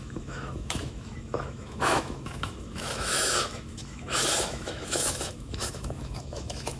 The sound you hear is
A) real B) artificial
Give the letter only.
B